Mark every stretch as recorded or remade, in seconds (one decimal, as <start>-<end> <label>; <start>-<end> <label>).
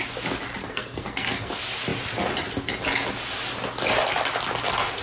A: 0.0-0.6 recorded; 0.6-1.5 remade; 1.5-5.0 recorded